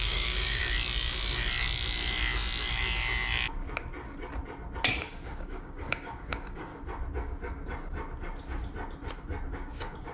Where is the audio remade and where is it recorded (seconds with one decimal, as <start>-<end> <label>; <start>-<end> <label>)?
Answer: 0.0-0.6 remade; 0.6-4.9 recorded; 4.9-6.7 remade; 6.7-9.5 recorded; 9.5-10.1 remade